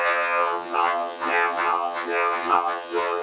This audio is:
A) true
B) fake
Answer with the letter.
B